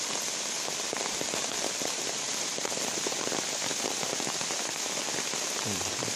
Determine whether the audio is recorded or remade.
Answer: recorded